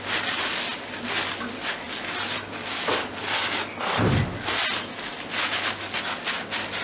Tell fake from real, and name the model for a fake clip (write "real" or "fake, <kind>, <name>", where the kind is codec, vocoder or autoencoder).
real